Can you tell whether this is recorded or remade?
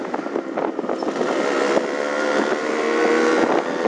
recorded